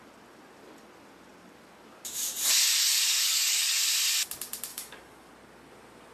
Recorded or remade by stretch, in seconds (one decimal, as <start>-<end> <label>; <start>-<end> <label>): 0.0-2.8 recorded; 2.8-3.8 remade; 3.8-4.7 recorded; 4.7-5.3 remade; 5.3-6.1 recorded